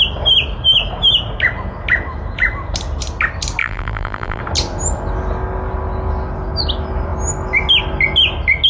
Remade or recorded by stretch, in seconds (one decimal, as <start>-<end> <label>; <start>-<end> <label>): 0.0-3.6 recorded; 3.6-4.4 remade; 4.4-8.7 recorded